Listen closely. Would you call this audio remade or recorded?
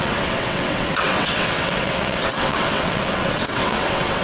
remade